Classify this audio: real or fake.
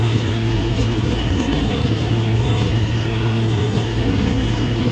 fake